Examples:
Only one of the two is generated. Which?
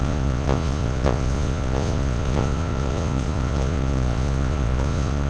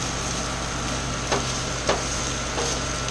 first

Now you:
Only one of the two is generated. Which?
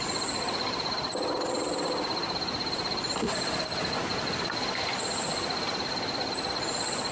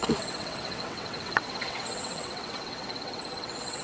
second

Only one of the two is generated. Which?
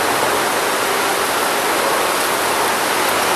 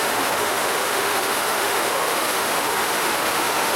second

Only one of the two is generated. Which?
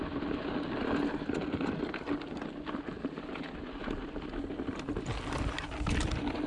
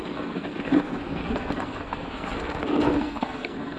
second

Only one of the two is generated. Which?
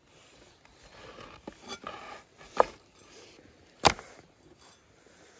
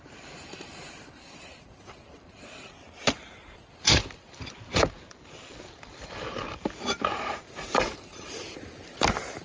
second